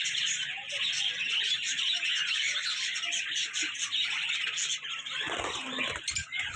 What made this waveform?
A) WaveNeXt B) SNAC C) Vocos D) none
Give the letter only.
D